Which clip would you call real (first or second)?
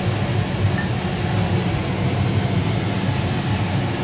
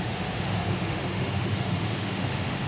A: first